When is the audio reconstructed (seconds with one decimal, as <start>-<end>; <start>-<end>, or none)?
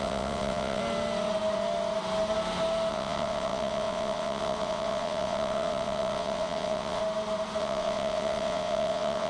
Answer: 0.0-0.8; 2.9-7.0; 7.6-9.3